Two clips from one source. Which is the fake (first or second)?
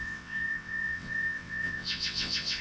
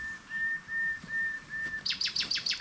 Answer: first